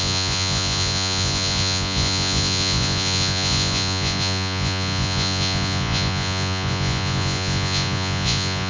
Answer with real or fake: fake